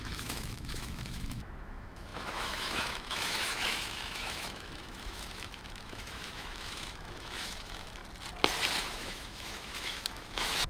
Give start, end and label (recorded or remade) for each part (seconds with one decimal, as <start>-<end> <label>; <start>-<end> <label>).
0.0-8.0 remade; 8.0-8.8 recorded; 8.8-10.7 remade